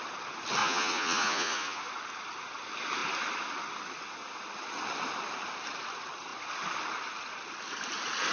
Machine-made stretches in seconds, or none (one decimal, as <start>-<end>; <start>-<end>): 0.6-1.8